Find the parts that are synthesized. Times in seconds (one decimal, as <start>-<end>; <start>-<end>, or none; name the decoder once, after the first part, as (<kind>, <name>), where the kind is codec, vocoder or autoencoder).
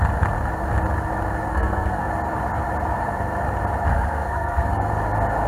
1.5-2.1 (codec, SNAC); 3.9-4.9